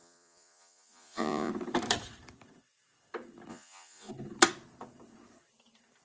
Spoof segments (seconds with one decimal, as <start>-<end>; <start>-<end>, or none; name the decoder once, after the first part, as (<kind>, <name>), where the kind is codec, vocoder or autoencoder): 0.0-1.5 (vocoder, Vocos); 3.5-4.1

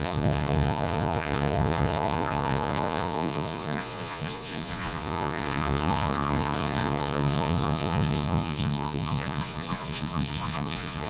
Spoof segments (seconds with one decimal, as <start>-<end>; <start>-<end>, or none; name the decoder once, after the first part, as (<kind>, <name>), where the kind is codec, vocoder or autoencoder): 0.0-11.1 (vocoder, Vocos)

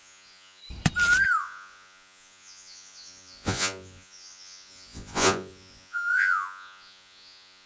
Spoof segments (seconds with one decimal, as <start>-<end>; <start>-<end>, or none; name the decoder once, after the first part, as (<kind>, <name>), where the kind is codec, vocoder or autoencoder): 0.0-0.6 (vocoder, Vocos); 1.4-7.7

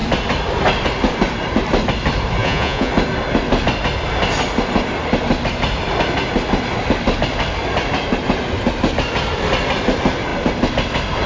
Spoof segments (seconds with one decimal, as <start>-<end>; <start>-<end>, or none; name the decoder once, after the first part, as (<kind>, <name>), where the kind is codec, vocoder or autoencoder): 2.4-2.9 (vocoder, Vocos)